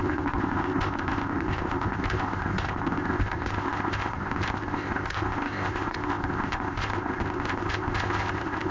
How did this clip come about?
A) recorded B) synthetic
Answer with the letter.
B